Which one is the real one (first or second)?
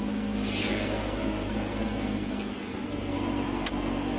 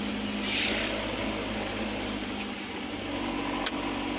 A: second